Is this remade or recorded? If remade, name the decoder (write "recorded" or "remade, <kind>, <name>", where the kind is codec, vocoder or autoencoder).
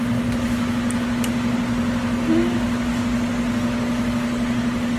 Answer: recorded